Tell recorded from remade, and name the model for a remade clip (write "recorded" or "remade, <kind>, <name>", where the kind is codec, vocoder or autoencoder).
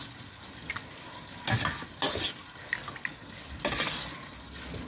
recorded